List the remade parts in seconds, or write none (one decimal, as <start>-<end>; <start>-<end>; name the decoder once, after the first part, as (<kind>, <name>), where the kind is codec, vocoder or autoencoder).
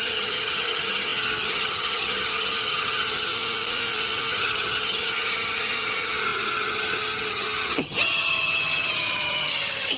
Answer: 0.0-3.3 (vocoder, HiFi-GAN); 4.3-10.0